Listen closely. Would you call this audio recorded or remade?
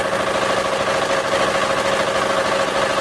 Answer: recorded